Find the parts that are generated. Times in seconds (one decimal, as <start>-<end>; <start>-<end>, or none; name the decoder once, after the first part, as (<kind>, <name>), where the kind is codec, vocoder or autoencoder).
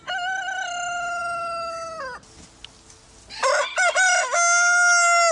none